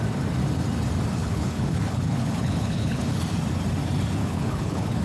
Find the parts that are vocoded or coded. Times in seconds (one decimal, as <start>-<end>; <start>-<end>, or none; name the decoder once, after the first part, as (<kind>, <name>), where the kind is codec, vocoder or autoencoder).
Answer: 1.2-3.2 (codec, HILCodec); 4.2-5.0